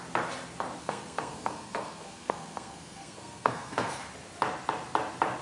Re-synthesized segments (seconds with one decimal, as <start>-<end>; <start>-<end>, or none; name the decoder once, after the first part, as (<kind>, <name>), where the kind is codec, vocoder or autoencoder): 0.8-4.0 (codec, SNAC)